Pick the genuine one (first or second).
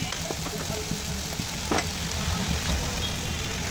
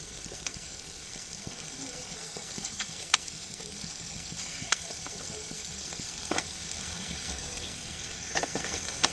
first